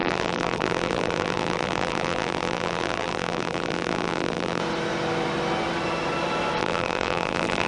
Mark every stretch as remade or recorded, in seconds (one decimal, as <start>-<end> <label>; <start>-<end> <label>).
0.0-4.6 remade; 4.6-6.6 recorded; 6.6-7.7 remade